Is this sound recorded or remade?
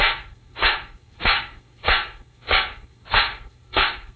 remade